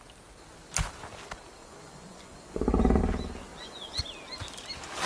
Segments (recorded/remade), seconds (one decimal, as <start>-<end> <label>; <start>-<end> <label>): 0.0-1.6 recorded; 1.6-3.0 remade; 3.0-3.5 recorded; 3.5-4.0 remade; 4.0-5.1 recorded